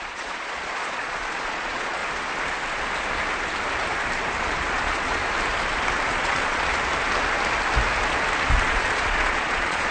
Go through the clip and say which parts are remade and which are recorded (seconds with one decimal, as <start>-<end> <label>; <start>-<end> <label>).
0.0-2.0 remade; 2.0-4.4 recorded; 4.4-5.2 remade; 5.2-6.1 recorded; 6.1-6.7 remade; 6.7-8.6 recorded; 8.6-9.9 remade